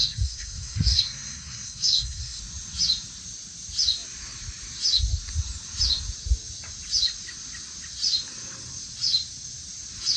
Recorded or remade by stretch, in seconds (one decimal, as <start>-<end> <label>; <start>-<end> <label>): 0.0-2.4 remade; 2.4-10.2 recorded